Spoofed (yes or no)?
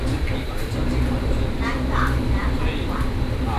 no